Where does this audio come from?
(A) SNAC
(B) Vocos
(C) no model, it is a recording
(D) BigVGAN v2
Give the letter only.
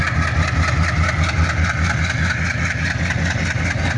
C